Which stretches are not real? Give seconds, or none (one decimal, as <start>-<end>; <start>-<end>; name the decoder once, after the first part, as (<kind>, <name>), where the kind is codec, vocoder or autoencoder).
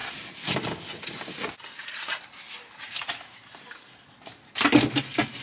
none